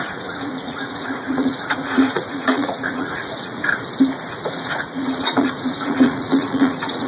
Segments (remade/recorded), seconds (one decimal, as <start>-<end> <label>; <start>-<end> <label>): 0.0-3.6 remade; 3.6-4.3 recorded; 4.3-7.1 remade